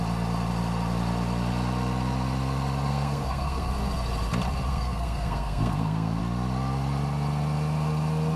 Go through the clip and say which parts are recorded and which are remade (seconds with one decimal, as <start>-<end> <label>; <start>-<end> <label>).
0.0-2.9 recorded; 2.9-3.7 remade; 3.7-4.7 recorded; 4.7-6.2 remade; 6.2-8.4 recorded